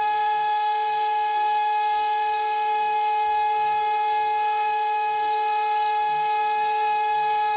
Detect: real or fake fake